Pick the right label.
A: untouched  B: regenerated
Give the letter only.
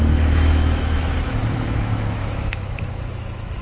B